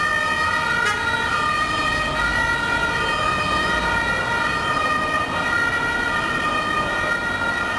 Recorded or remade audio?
recorded